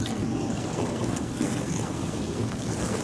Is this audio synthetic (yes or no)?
yes